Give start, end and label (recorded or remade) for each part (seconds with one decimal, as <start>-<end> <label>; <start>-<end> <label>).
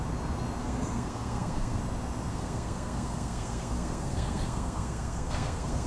0.0-0.6 recorded; 0.6-1.8 remade; 1.8-2.3 recorded; 2.3-5.9 remade